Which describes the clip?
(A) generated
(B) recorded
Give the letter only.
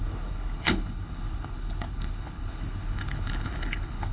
A